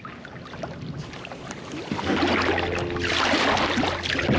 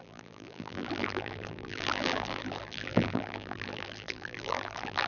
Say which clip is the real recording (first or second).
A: first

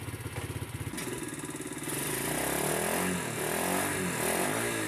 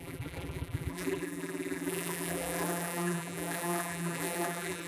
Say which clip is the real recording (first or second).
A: first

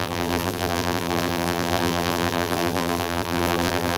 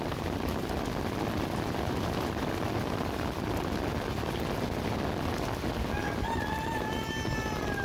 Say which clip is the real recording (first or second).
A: second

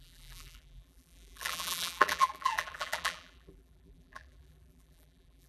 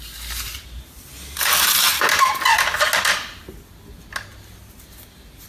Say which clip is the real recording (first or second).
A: second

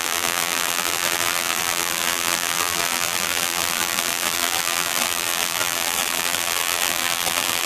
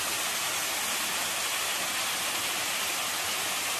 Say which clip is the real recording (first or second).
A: second